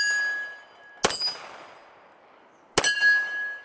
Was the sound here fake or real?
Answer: real